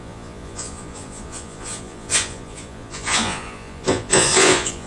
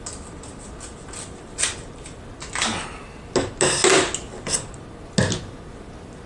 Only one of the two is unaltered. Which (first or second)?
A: second